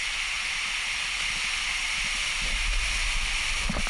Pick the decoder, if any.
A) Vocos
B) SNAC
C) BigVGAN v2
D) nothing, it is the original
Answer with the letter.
D